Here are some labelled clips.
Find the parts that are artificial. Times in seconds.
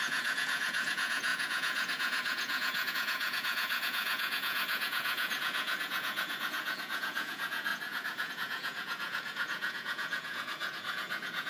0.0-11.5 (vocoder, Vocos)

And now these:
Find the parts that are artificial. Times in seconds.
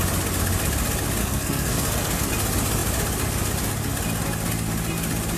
1.2-2.3 (codec, SNAC)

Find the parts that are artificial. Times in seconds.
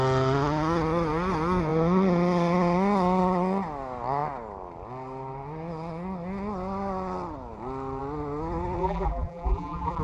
8.8-10.0 (vocoder, BigVGAN v2)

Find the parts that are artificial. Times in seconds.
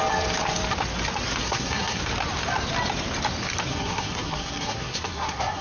1.4-2.0 (codec, SNAC); 3.7-5.6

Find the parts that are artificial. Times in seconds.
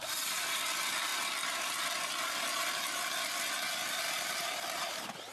none